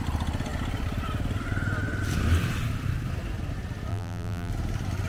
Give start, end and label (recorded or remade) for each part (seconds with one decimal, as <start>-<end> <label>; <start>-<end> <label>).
0.0-3.9 recorded; 3.9-4.5 remade; 4.5-5.1 recorded

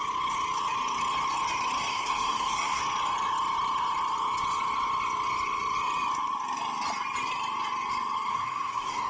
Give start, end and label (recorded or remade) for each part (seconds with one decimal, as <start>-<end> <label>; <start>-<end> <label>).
0.0-1.9 recorded; 1.9-2.8 remade; 2.8-8.3 recorded; 8.3-9.1 remade

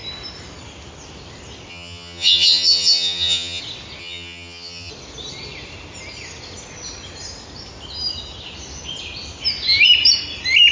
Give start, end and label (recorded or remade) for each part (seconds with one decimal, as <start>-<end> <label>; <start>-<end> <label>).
0.0-1.7 recorded; 1.7-3.6 remade; 3.6-4.0 recorded; 4.0-4.9 remade; 4.9-10.7 recorded